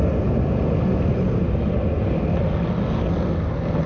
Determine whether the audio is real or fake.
real